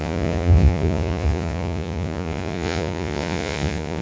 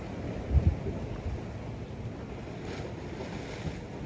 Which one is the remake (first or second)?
first